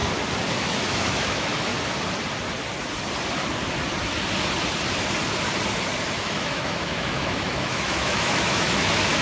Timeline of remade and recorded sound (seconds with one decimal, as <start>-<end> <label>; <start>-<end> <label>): 0.0-0.5 recorded; 0.5-1.7 remade; 1.7-6.1 recorded; 6.1-9.2 remade